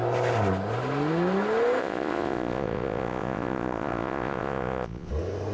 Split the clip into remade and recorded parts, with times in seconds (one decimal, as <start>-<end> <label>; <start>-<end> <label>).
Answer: 0.0-1.8 recorded; 1.8-5.1 remade; 5.1-5.5 recorded